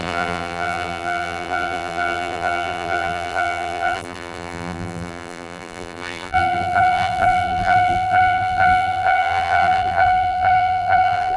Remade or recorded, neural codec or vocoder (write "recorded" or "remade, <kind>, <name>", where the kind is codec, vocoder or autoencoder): remade, vocoder, BigVGAN v2